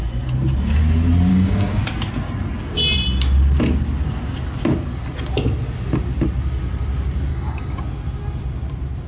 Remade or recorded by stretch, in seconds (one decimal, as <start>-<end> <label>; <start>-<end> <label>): 0.0-1.3 recorded; 1.3-1.8 remade; 1.8-7.3 recorded; 7.3-7.8 remade; 7.8-9.1 recorded